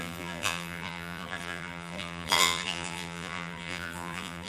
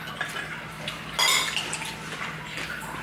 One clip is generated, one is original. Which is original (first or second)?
second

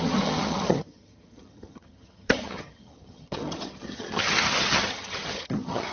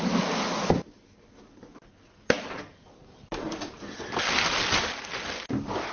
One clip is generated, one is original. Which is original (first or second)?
second